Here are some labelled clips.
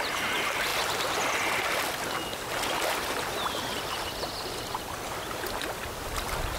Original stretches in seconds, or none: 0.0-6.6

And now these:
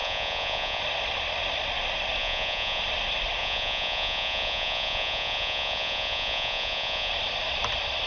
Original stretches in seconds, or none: 0.8-2.2; 2.8-3.4; 7.1-8.1